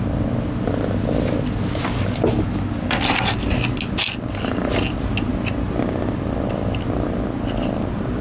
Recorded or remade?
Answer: recorded